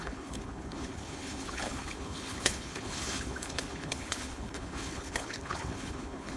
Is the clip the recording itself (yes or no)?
no